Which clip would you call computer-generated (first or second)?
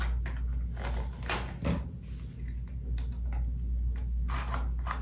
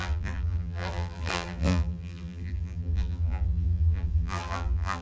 second